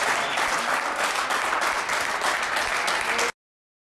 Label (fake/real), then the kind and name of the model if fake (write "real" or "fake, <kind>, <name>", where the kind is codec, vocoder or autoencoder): real